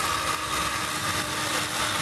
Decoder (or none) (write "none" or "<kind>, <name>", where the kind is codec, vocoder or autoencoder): none